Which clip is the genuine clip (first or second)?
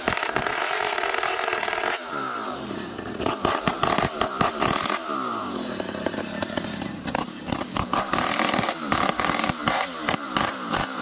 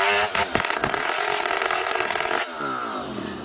second